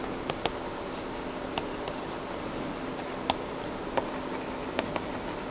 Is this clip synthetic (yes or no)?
no